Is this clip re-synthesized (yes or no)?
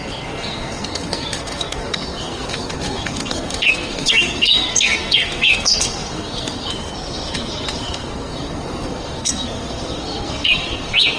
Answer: yes